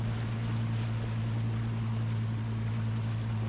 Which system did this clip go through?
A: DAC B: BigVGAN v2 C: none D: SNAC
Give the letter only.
C